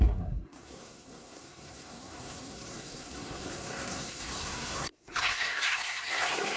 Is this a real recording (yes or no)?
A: no